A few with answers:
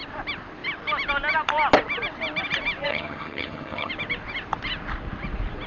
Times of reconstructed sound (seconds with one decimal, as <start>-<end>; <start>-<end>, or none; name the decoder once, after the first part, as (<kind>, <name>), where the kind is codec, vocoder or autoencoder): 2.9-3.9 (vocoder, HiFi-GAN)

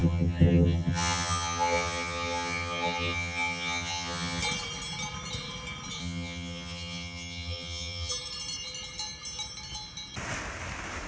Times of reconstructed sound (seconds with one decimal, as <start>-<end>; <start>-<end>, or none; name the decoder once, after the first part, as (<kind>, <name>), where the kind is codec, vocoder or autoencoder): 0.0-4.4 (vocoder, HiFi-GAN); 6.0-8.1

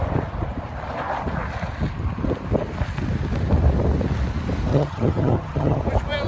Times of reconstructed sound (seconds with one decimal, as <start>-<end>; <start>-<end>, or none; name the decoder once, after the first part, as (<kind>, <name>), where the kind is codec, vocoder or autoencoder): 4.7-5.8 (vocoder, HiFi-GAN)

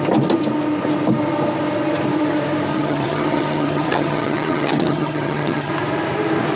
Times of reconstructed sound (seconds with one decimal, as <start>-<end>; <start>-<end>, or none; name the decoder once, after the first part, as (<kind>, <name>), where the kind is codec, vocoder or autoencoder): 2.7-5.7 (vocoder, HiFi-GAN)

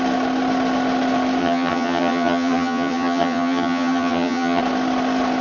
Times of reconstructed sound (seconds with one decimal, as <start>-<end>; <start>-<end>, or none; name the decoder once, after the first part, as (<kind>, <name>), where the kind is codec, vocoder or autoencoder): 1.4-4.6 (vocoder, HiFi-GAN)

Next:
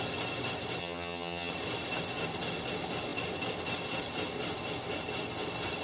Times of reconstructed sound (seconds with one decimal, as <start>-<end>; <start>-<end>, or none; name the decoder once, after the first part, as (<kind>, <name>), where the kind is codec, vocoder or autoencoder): 0.8-1.5 (vocoder, HiFi-GAN)

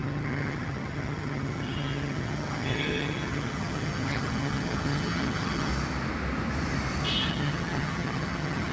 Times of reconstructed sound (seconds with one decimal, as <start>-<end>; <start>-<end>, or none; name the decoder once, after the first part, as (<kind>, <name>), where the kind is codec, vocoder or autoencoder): 0.0-5.7 (vocoder, HiFi-GAN); 7.3-8.7

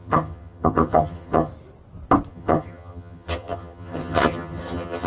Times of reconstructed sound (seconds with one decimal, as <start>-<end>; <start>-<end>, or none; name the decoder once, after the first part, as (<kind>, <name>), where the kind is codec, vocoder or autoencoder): 0.0-1.5 (vocoder, HiFi-GAN); 2.3-5.1